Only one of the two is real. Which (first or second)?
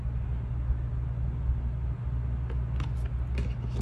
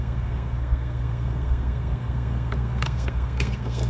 first